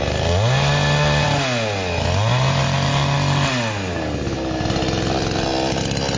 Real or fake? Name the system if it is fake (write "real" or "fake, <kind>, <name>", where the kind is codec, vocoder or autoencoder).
real